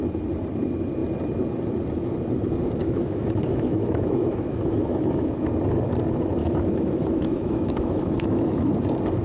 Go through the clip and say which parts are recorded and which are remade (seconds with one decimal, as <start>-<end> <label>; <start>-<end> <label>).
0.0-2.8 recorded; 2.8-5.5 remade; 5.5-6.4 recorded; 6.4-8.7 remade; 8.7-9.2 recorded